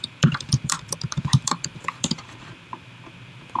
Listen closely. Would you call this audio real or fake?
fake